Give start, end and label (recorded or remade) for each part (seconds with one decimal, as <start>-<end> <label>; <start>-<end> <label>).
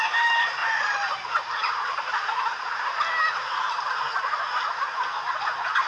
0.0-0.6 recorded; 0.6-3.0 remade; 3.0-5.9 recorded